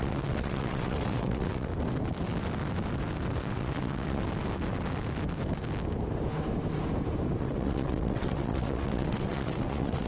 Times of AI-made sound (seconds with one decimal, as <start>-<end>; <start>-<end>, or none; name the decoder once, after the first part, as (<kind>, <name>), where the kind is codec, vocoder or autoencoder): 0.0-1.7 (vocoder, WaveNeXt); 3.4-4.2; 7.4-10.1